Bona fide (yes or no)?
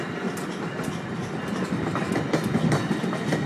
yes